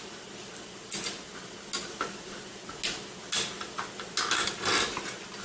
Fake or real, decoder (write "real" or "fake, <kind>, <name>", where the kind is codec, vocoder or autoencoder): real